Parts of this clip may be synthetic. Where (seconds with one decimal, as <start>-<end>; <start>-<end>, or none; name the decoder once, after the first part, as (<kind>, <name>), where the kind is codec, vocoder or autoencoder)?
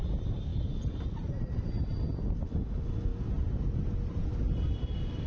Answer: none